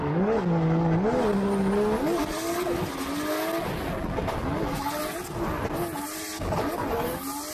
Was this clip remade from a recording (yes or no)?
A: no